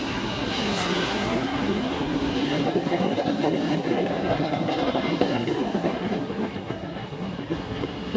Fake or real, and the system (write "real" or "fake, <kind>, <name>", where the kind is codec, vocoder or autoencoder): fake, codec, SNAC